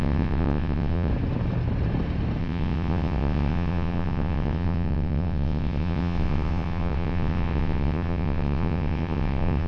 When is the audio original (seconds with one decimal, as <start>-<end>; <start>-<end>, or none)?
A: 1.1-2.4